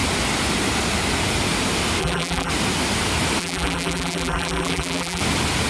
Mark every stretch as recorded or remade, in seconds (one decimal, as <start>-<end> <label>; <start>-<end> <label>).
0.0-2.0 recorded; 2.0-2.5 remade; 2.5-3.4 recorded; 3.4-5.2 remade; 5.2-5.7 recorded